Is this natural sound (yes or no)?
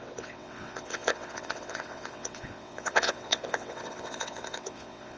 no